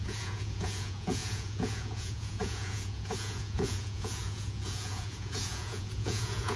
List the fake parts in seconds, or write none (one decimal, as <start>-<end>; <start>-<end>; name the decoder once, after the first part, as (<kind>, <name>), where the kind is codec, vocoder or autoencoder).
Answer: 0.0-6.6 (vocoder, Vocos)